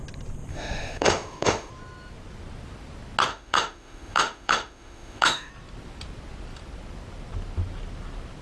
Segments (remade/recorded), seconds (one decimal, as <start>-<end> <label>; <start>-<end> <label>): 0.0-0.5 recorded; 0.5-1.7 remade; 1.7-3.3 recorded; 3.3-5.5 remade; 5.5-8.4 recorded